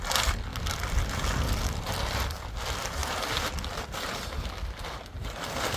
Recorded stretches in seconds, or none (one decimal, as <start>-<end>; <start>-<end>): 0.0-5.8